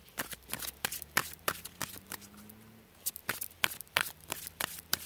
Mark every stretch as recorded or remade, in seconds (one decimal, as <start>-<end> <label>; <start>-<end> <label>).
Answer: 0.0-5.1 remade